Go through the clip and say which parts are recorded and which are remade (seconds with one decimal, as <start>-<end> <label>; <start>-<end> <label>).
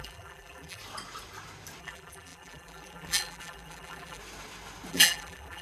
0.0-0.8 remade; 0.8-1.8 recorded; 1.8-4.2 remade; 4.2-4.9 recorded; 4.9-5.6 remade